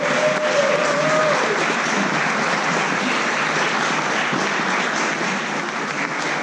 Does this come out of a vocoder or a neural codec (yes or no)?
no